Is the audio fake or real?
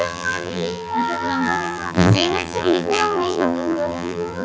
fake